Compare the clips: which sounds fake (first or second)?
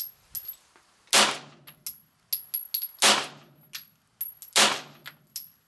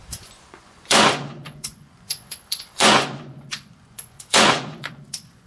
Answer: second